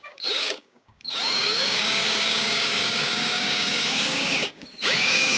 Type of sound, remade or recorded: remade